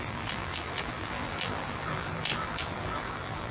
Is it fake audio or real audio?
fake